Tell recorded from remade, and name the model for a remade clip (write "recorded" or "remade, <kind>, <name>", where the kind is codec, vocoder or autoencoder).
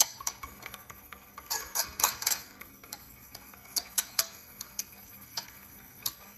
remade, codec, SNAC